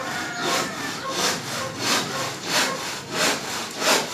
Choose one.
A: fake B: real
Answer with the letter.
B